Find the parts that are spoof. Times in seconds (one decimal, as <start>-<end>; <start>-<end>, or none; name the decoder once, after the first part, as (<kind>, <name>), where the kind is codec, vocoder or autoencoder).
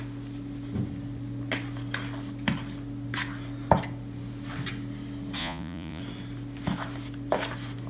5.4-6.0 (vocoder, Vocos)